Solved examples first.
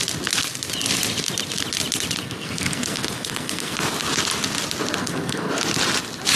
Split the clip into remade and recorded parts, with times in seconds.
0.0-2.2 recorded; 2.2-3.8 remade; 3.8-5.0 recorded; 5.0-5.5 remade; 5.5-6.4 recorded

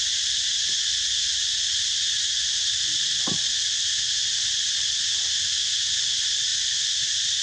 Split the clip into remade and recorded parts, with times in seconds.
0.0-7.4 recorded